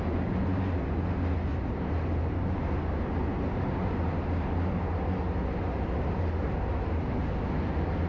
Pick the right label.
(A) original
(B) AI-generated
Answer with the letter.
A